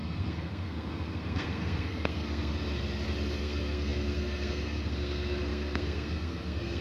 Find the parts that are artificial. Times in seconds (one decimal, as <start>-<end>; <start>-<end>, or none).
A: 0.0-2.5; 3.4-6.8